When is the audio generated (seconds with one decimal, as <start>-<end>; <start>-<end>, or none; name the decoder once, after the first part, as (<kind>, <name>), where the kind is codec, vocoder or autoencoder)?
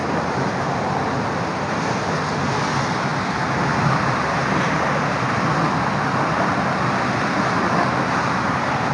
3.1-3.6 (vocoder, BigVGAN v2)